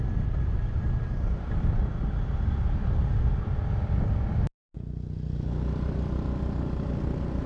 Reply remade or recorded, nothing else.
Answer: recorded